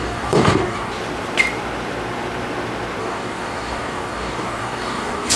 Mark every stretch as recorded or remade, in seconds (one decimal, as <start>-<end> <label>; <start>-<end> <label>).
0.0-0.9 remade; 0.9-3.0 recorded; 3.0-5.4 remade

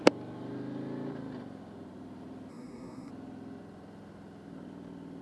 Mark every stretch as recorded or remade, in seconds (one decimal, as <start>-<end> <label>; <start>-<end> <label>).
0.0-2.5 recorded; 2.5-3.1 remade; 3.1-5.2 recorded

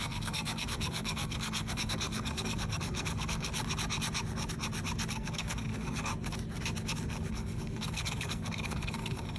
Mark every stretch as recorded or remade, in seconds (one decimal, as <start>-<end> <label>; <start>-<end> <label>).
0.0-3.5 remade; 3.5-5.1 recorded; 5.1-6.1 remade; 6.1-7.3 recorded; 7.3-9.4 remade

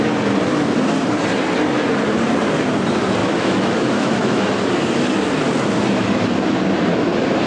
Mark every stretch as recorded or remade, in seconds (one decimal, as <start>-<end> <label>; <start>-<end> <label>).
0.0-3.2 recorded; 3.2-4.4 remade; 4.4-7.5 recorded